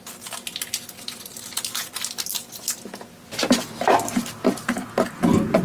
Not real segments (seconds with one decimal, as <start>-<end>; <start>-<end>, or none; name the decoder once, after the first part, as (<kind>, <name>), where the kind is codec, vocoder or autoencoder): none